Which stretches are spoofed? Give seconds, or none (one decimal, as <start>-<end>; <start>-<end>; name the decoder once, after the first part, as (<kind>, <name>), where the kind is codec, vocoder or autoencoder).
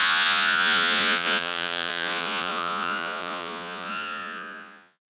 0.0-5.1 (vocoder, Vocos)